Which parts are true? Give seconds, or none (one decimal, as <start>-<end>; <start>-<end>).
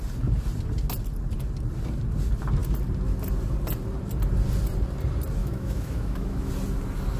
0.0-5.4; 6.5-7.2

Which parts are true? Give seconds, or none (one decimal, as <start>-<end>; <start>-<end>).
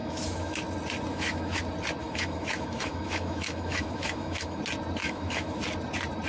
0.6-1.1; 1.6-2.0; 4.6-5.0; 5.6-6.3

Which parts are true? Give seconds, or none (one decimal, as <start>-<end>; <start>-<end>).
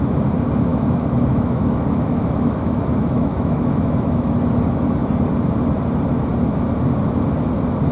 0.0-0.7; 4.3-7.9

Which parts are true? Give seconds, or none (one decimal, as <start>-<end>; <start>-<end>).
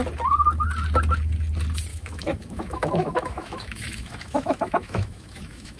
0.0-1.9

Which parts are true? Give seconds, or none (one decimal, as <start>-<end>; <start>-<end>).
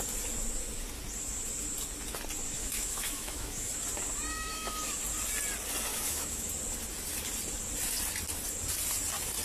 0.0-2.6; 3.7-4.3; 4.9-5.9; 6.5-9.4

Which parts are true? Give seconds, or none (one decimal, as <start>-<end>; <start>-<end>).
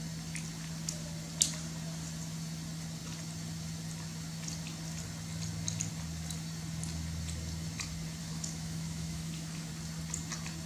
0.0-8.2; 9.7-10.7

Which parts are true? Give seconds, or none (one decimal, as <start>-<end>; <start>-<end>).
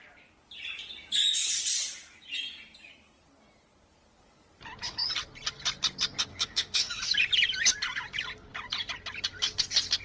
0.0-6.3; 7.0-10.0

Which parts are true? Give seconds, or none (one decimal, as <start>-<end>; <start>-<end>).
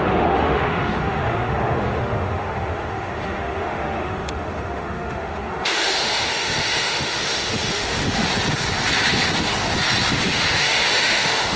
8.3-10.1